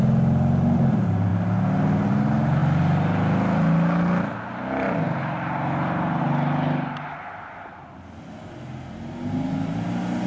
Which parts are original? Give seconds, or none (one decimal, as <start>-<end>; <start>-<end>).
0.0-10.3